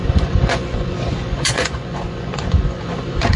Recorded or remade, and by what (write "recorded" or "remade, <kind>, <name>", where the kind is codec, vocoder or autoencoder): remade, vocoder, Vocos